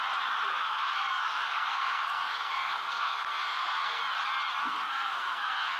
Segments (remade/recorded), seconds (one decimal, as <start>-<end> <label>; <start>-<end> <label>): 0.0-0.5 recorded; 0.5-4.0 remade; 4.0-4.6 recorded; 4.6-5.8 remade